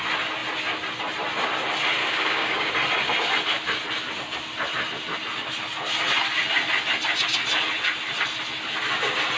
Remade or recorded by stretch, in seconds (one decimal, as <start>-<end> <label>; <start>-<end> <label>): 0.0-2.0 recorded; 2.0-2.7 remade; 2.7-9.4 recorded